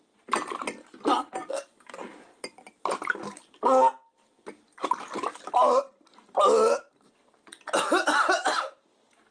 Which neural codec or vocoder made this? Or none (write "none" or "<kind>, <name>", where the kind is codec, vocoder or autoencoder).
none